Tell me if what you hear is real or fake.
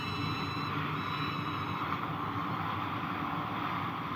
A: real